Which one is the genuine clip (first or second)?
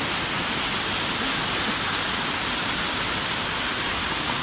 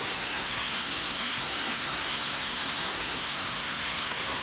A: first